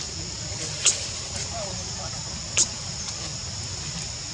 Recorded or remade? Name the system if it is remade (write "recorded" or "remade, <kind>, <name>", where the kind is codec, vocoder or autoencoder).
recorded